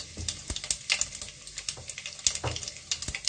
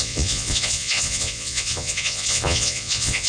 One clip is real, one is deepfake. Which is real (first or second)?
first